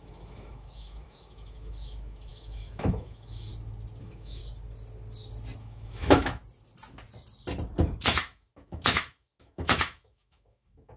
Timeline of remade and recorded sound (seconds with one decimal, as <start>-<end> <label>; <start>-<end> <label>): 0.0-3.5 remade; 3.5-4.0 recorded; 4.0-4.4 remade; 4.4-5.6 recorded; 5.6-6.4 remade; 6.4-8.0 recorded; 8.0-11.0 remade